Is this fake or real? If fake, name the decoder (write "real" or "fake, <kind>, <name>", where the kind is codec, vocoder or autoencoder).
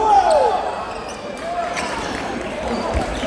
fake, vocoder, BigVGAN v2